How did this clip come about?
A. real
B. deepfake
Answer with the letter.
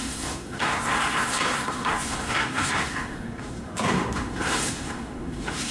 B